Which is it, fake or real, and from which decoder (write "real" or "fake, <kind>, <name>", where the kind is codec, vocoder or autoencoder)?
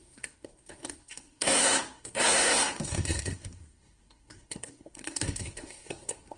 fake, codec, SNAC